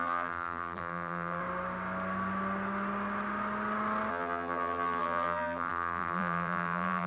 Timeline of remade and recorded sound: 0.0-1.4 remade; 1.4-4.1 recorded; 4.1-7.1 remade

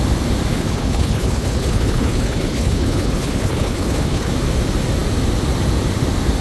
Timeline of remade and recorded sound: 0.0-0.5 recorded; 0.5-4.3 remade; 4.3-6.4 recorded

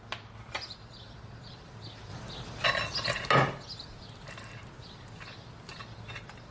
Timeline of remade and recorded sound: 0.0-6.5 recorded

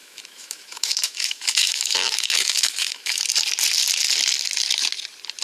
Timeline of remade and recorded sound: 0.0-3.2 remade; 3.2-5.4 recorded

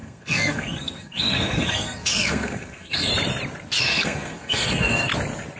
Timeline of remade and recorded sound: 0.0-3.1 remade; 3.1-3.8 recorded; 3.8-5.1 remade; 5.1-5.6 recorded

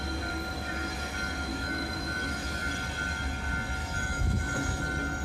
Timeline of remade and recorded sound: 0.0-1.5 recorded; 1.5-2.7 remade; 2.7-3.8 recorded; 3.8-4.8 remade; 4.8-5.2 recorded

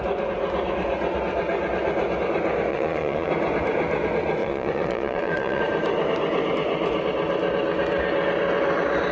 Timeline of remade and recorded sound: 0.0-2.7 recorded; 2.7-3.3 remade; 3.3-4.4 recorded; 4.4-5.6 remade; 5.6-9.1 recorded

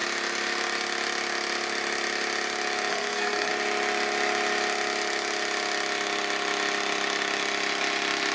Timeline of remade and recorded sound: 0.0-2.9 recorded; 2.9-3.5 remade; 3.5-8.3 recorded